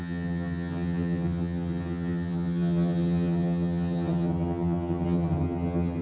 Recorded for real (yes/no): no